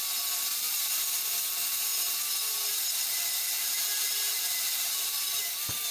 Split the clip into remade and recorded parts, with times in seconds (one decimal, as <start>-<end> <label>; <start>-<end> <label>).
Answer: 0.0-0.5 recorded; 0.5-1.2 remade; 1.2-1.9 recorded; 1.9-5.4 remade; 5.4-5.9 recorded